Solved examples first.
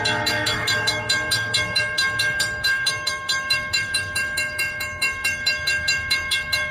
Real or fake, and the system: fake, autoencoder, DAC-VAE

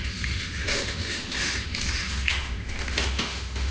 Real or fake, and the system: fake, autoencoder, DAC-VAE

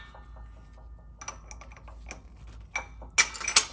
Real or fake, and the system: real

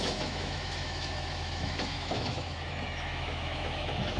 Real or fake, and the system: fake, autoencoder, DAC-VAE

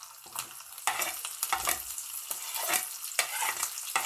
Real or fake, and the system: real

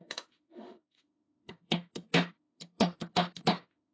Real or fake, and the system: fake, autoencoder, DAC-VAE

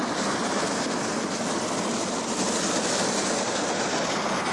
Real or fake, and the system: real